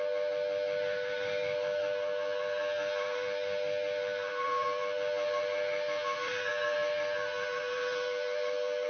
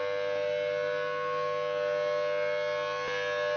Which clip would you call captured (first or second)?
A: second